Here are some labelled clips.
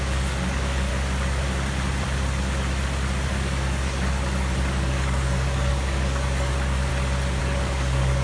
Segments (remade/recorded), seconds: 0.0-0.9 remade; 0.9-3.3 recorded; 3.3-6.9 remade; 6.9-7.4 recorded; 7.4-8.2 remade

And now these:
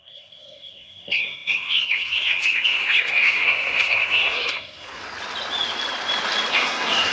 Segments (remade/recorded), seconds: 0.0-5.0 remade; 5.0-6.5 recorded; 6.5-7.1 remade

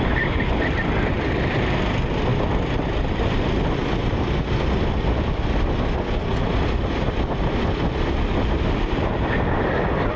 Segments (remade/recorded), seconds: 0.0-10.2 recorded

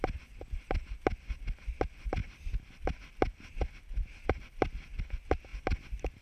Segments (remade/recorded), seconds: 0.0-6.2 recorded

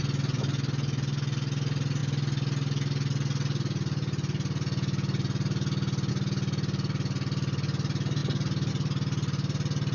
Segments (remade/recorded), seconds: 0.0-9.9 recorded